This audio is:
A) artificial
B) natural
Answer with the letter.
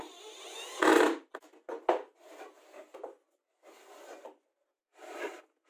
B